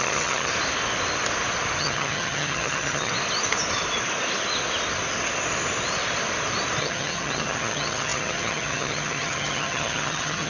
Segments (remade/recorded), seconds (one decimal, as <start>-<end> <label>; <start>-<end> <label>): 0.0-0.5 remade; 0.5-1.8 recorded; 1.8-3.1 remade; 3.1-6.8 recorded; 6.8-10.5 remade